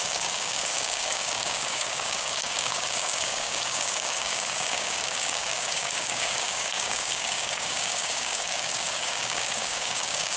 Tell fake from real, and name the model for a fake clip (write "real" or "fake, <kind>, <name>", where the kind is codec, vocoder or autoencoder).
fake, codec, DAC